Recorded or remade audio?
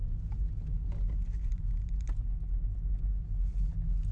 recorded